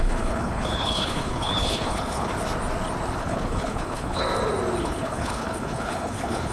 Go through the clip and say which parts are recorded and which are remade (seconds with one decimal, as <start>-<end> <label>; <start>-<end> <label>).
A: 0.0-2.3 remade; 2.3-3.2 recorded; 3.2-4.2 remade; 4.2-4.8 recorded; 4.8-6.5 remade